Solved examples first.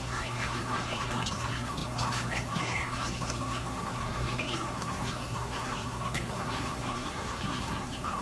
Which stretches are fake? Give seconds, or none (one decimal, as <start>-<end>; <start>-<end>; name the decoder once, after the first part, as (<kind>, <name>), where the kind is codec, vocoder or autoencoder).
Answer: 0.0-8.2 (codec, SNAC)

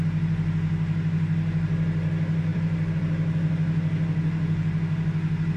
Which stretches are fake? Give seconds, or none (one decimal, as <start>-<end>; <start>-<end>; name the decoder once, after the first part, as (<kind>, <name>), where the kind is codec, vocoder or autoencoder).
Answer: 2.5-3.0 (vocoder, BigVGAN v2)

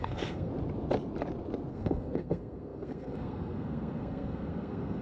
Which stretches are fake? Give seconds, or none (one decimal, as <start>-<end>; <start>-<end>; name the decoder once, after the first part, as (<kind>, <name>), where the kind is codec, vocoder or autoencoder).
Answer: 0.0-0.5 (codec, SNAC); 1.7-5.0